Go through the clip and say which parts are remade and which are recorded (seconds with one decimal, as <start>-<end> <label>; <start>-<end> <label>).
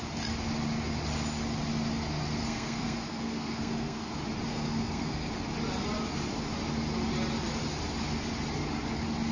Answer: 0.0-2.4 recorded; 2.4-4.1 remade; 4.1-4.5 recorded; 4.5-5.3 remade; 5.3-9.3 recorded